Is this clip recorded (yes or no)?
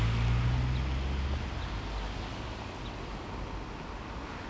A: yes